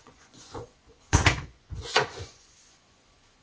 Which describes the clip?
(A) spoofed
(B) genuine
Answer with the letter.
A